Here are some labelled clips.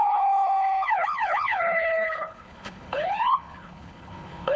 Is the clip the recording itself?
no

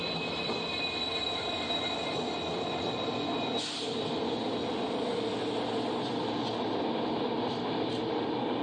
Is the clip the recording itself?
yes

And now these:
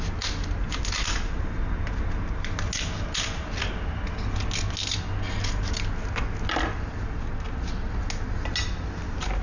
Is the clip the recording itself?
yes